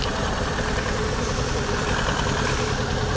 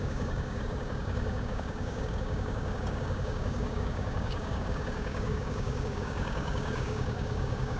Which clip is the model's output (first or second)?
second